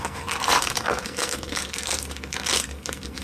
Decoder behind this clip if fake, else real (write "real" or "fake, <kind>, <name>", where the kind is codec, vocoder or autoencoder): fake, codec, SNAC